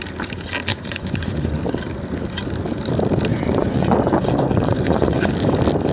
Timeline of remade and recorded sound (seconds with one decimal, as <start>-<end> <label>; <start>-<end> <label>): 0.0-0.7 recorded; 0.7-1.6 remade; 1.6-3.3 recorded; 3.3-5.3 remade; 5.3-5.9 recorded